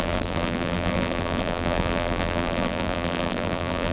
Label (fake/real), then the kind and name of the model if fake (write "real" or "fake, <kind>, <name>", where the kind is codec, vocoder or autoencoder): fake, vocoder, BigVGAN v2